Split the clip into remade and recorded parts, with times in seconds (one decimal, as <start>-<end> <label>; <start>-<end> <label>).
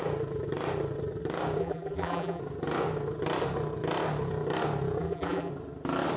0.0-1.6 recorded; 1.6-2.4 remade; 2.4-5.0 recorded; 5.0-5.5 remade; 5.5-6.2 recorded